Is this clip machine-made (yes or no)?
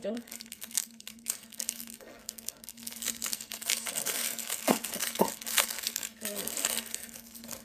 yes